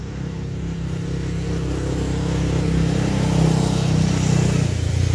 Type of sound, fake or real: real